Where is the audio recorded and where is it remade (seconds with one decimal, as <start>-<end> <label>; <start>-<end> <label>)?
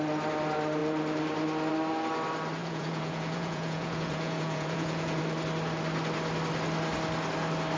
0.0-2.6 recorded; 2.6-5.2 remade; 5.2-7.8 recorded